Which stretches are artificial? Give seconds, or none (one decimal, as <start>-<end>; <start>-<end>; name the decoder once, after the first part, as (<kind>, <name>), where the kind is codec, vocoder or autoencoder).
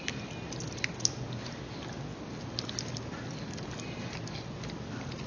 none